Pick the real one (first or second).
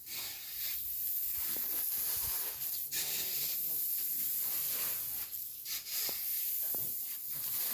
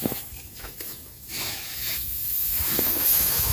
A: first